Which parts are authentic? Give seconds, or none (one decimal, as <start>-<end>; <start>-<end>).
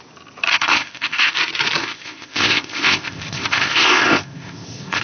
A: 0.0-0.5; 1.3-1.8